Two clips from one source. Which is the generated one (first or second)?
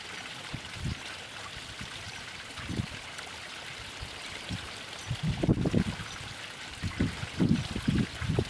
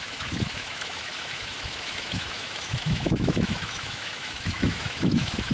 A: second